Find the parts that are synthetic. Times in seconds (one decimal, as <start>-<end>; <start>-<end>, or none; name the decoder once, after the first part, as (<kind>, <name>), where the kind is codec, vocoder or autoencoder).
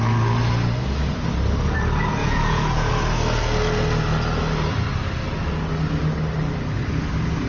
2.2-2.9 (vocoder, Vocos)